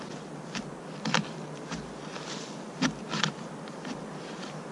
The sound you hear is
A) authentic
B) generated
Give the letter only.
A